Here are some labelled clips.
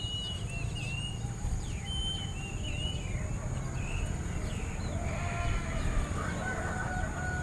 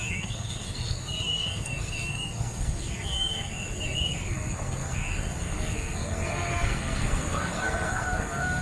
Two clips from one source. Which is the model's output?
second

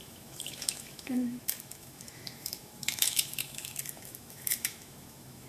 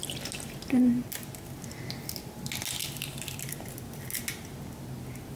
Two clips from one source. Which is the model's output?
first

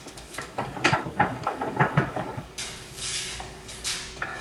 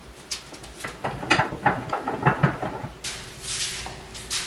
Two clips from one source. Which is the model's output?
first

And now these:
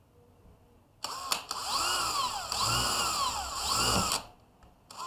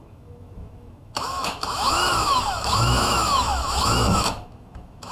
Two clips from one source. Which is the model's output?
second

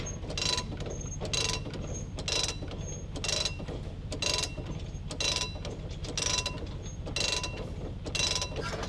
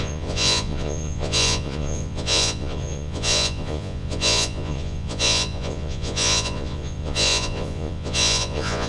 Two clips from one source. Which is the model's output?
second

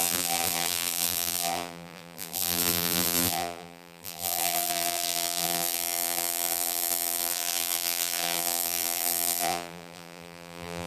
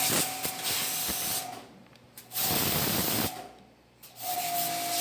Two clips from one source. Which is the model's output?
first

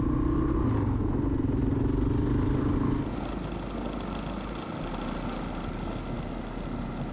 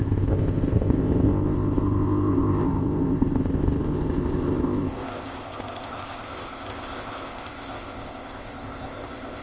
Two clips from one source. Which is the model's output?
second